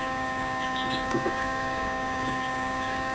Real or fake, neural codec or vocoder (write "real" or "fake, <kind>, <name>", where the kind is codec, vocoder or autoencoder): fake, codec, DAC